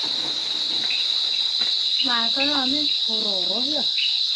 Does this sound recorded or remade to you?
recorded